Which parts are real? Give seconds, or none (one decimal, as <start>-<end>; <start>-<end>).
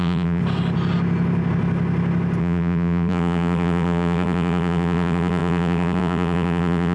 0.4-2.4